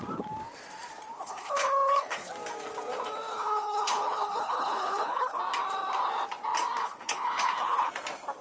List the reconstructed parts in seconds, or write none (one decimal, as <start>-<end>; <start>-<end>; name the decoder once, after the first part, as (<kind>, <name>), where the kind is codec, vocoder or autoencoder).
1.2-2.3 (codec, HILCodec); 3.3-5.4; 6.8-7.9